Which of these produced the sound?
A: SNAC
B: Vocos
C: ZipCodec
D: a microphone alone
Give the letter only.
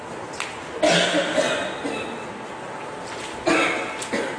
D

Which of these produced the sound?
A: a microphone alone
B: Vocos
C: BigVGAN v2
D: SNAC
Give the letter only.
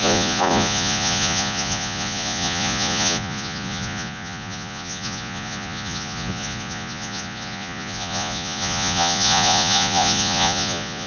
B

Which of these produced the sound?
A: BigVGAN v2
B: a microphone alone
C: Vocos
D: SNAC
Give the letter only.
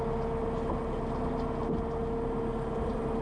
B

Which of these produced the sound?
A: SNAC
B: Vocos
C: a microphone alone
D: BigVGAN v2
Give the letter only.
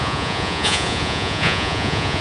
B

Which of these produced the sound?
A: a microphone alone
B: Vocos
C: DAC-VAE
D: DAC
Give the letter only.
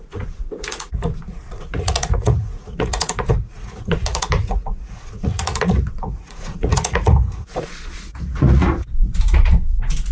B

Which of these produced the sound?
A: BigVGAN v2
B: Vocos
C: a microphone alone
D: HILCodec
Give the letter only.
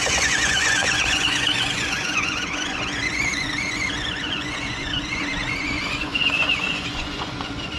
B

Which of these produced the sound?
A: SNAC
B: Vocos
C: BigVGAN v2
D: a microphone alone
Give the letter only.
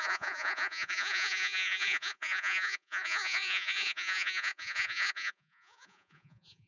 B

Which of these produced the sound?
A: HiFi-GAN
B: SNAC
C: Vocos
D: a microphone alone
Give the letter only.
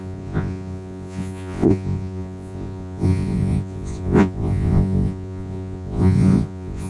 C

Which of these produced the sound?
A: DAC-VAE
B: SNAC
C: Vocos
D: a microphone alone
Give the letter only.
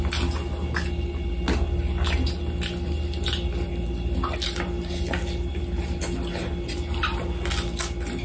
D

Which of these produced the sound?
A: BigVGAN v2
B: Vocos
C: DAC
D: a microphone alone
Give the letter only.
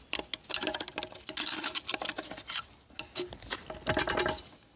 D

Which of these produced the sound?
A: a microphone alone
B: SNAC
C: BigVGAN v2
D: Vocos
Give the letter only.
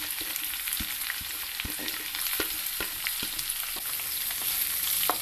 A